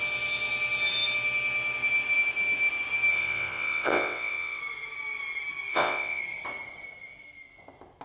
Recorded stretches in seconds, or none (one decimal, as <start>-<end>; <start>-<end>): 0.0-3.1; 4.6-5.7; 6.2-8.0